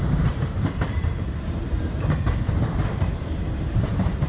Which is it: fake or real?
fake